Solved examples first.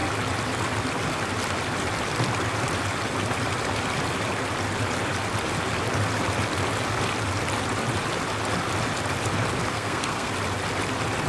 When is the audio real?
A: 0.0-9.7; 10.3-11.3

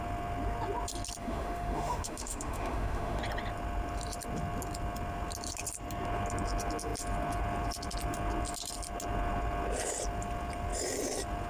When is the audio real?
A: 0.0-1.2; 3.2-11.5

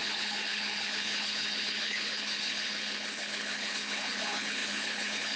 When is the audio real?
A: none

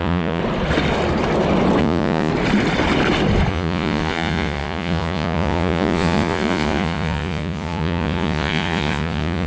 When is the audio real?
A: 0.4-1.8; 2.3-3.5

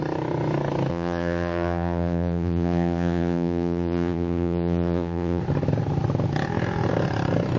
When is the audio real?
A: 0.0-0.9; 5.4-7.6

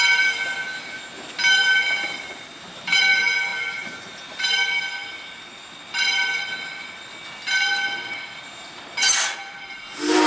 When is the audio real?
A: 0.0-10.3

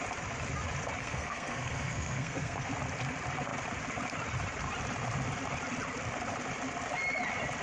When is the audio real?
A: 0.0-1.0; 2.7-7.6